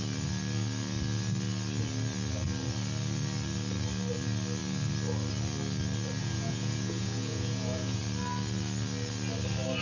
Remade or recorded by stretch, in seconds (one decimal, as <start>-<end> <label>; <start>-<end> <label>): 0.0-6.2 recorded; 6.2-8.0 remade; 8.0-9.8 recorded